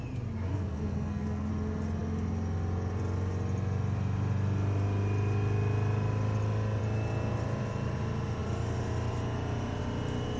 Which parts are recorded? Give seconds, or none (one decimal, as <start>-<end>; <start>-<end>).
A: 0.0-0.5; 1.5-10.4